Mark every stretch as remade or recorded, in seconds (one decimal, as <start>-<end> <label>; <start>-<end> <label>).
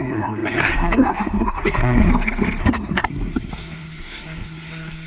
0.0-2.1 remade; 2.1-2.6 recorded; 2.6-5.1 remade